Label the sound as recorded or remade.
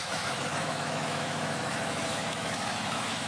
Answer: remade